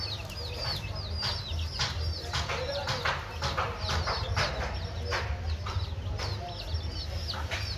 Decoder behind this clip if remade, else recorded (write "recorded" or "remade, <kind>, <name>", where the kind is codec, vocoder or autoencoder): recorded